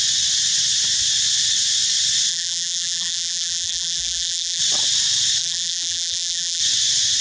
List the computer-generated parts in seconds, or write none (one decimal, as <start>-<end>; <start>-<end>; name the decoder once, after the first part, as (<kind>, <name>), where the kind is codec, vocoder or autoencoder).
2.3-4.6 (vocoder, BigVGAN v2); 5.4-6.6